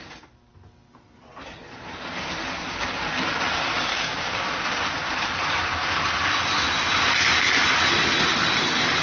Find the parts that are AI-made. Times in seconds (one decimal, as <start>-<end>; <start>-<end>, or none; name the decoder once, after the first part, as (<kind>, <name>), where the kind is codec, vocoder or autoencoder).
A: 3.9-4.4 (codec, DAC)